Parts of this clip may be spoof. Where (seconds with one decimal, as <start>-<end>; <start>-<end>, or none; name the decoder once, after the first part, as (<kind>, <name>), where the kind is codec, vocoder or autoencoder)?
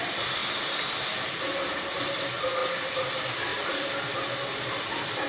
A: none